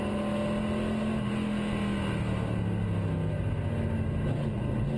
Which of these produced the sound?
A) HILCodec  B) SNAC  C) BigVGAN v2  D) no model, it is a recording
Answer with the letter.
D